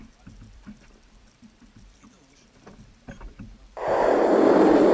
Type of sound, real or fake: fake